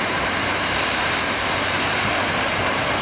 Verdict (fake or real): fake